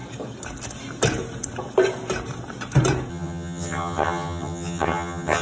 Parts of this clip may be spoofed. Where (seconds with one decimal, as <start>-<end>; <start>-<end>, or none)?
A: 3.1-5.4